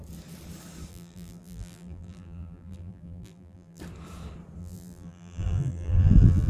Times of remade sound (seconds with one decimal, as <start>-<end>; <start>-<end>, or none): 0.9-3.8; 4.6-6.5